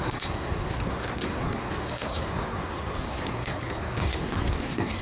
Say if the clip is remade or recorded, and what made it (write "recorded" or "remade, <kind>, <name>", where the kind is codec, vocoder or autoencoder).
remade, codec, SNAC